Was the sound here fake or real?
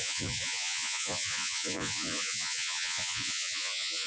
fake